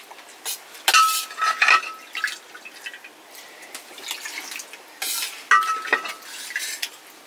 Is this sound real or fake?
real